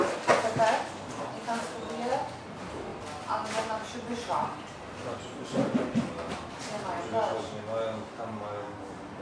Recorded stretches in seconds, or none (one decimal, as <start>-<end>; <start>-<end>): 0.0-9.2